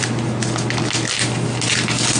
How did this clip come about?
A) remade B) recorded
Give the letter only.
B